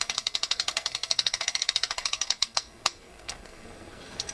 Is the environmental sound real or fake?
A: fake